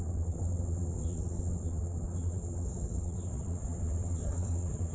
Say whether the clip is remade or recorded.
remade